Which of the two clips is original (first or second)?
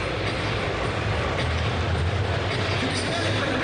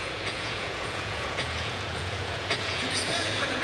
first